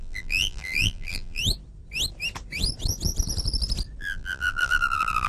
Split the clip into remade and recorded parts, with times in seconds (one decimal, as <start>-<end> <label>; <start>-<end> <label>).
0.0-1.4 remade; 1.4-4.0 recorded; 4.0-5.3 remade